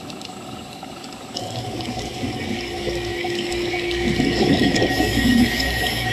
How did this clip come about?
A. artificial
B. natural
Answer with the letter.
A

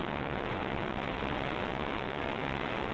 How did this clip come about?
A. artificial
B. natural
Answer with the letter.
A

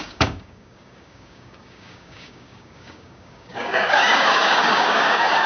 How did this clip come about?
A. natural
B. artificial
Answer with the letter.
B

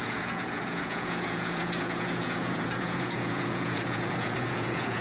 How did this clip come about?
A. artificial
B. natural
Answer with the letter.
A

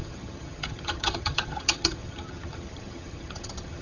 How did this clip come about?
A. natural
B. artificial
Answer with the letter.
B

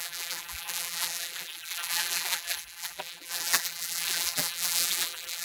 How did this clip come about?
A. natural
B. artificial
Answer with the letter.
B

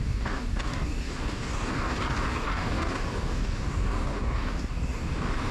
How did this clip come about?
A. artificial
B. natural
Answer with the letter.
A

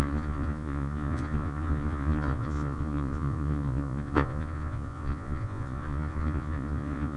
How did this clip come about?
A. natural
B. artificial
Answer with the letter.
B